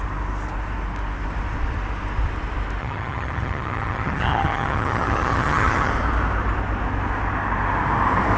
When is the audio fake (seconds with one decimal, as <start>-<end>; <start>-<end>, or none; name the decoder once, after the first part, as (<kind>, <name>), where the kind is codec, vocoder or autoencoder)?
2.8-5.9 (vocoder, HiFi-GAN)